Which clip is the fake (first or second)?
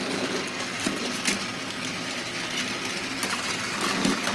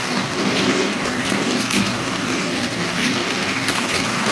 second